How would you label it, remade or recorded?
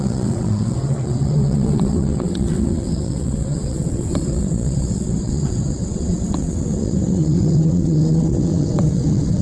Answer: remade